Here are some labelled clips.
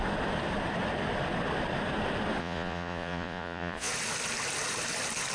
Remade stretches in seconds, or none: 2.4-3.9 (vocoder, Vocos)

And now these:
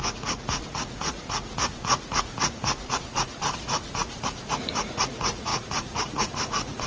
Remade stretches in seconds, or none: 0.0-6.9 (vocoder, Vocos)

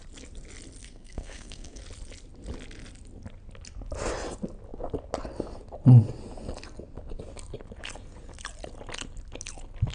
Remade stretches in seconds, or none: 0.8-1.8 (codec, SNAC)

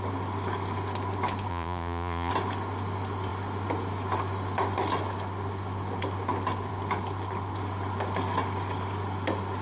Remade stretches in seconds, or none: 1.5-2.3 (vocoder, Vocos)

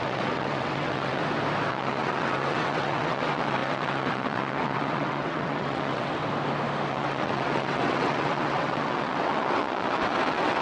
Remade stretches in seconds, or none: 0.0-1.2 (vocoder, WaveNeXt); 1.7-6.2; 6.9-10.6

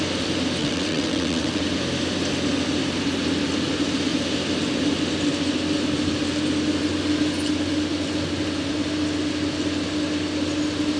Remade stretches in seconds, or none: 0.6-1.6 (vocoder, WaveNeXt)